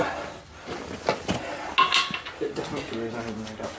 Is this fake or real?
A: real